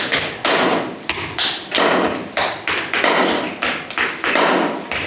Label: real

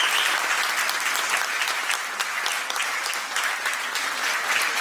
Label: real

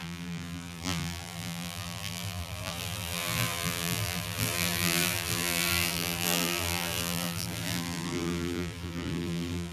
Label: fake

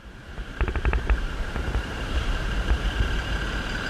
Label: fake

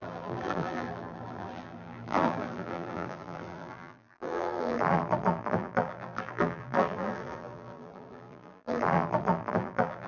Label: fake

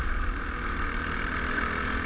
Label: fake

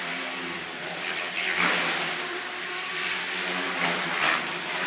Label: fake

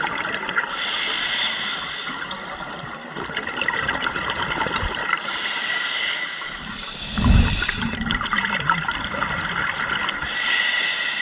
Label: fake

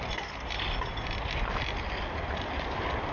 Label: real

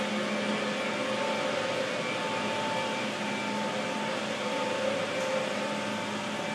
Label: real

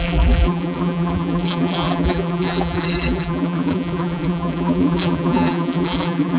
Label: fake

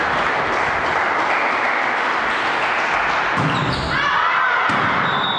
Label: real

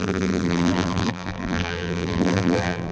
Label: fake